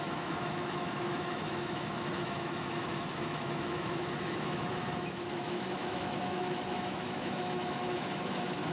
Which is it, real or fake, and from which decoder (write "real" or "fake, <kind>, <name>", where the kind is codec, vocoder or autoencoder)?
fake, autoencoder, DAC-VAE